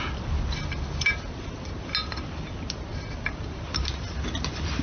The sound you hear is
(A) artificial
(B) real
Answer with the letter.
B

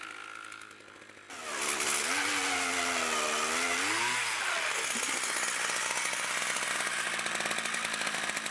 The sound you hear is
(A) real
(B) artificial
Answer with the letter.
A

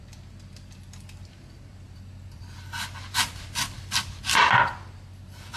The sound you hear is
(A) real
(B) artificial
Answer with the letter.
B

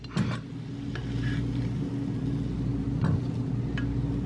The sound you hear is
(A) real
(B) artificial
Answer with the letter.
A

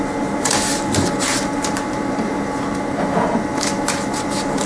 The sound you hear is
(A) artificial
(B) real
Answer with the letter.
A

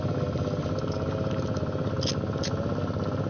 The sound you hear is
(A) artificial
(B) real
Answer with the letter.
B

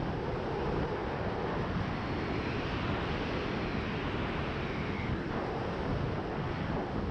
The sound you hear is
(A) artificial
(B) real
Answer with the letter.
B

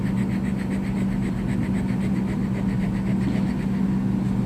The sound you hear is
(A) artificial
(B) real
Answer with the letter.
B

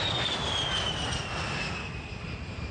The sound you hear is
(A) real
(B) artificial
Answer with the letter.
A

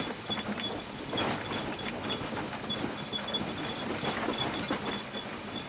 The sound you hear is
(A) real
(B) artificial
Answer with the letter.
A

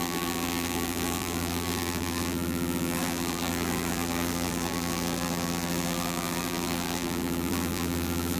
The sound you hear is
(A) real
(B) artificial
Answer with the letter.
B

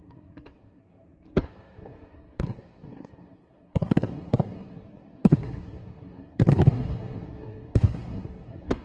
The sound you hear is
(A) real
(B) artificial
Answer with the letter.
B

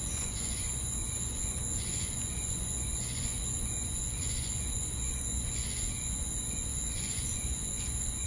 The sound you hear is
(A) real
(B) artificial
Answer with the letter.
B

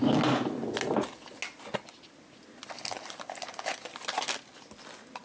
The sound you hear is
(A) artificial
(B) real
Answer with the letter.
B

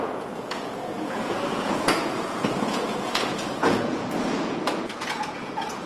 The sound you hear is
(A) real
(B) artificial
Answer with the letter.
B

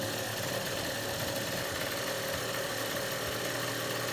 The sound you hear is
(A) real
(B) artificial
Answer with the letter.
A